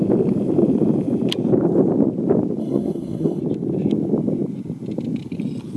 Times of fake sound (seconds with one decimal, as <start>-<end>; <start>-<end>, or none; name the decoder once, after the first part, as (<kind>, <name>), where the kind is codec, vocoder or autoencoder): 2.6-3.4 (codec, SNAC)